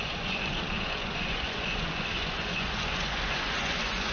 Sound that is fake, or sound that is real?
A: fake